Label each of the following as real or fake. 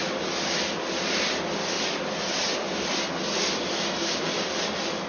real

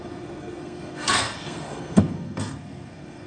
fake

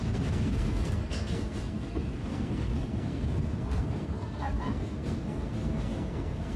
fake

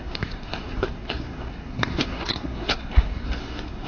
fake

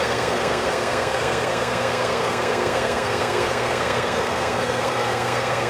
fake